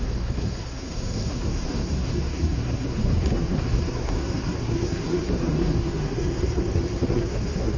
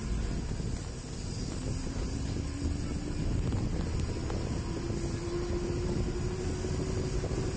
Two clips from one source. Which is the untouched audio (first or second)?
second